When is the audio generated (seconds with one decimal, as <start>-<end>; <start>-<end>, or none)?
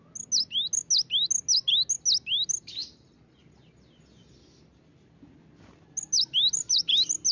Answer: none